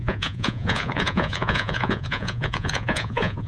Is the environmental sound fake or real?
fake